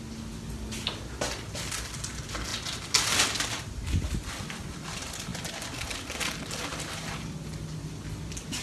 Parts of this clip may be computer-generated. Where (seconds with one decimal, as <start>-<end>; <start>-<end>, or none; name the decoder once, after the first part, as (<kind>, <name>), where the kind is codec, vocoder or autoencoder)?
none